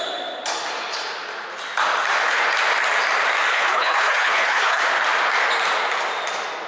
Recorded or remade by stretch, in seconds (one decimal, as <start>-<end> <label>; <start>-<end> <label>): 0.0-3.5 recorded; 3.5-4.8 remade; 4.8-6.7 recorded